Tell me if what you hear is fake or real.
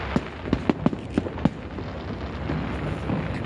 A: real